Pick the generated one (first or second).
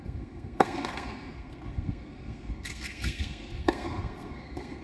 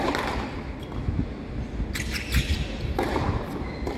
first